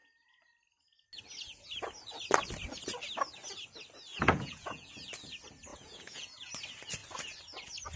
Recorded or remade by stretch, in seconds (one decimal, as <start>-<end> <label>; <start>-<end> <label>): 0.0-4.1 recorded; 4.1-4.9 remade; 4.9-5.7 recorded; 5.7-6.5 remade; 6.5-8.0 recorded